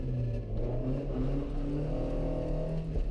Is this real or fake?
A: real